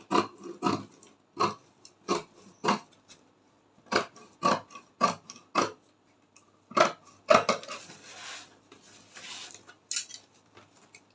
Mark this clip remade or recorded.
recorded